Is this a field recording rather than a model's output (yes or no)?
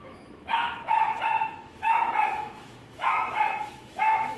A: no